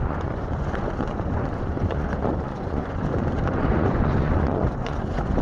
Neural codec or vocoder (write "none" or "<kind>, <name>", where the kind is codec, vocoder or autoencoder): vocoder, Vocos